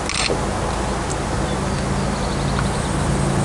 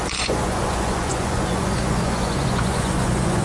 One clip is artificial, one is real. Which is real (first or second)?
first